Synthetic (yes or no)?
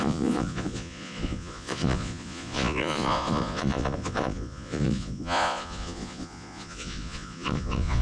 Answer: yes